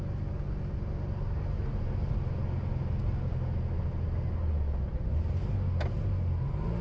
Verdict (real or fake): real